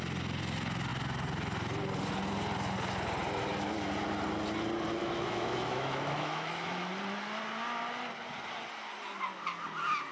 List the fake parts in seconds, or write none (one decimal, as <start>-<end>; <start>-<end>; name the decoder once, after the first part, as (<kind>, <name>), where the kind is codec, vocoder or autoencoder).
5.0-6.9 (autoencoder, DAC-VAE)

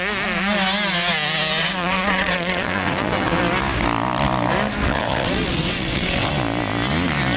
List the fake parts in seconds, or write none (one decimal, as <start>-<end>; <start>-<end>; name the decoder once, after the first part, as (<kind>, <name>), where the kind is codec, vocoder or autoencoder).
1.6-3.4 (vocoder, WaveNeXt); 4.8-6.3